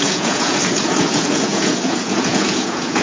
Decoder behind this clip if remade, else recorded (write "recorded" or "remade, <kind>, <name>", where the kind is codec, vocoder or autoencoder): remade, vocoder, Vocos